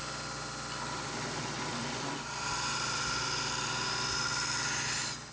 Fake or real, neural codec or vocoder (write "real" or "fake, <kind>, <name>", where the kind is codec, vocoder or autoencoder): real